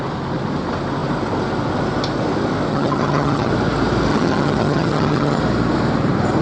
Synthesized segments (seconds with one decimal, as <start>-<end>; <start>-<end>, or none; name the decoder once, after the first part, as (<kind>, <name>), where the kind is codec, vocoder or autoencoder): 2.7-3.5 (vocoder, HiFi-GAN); 4.1-5.4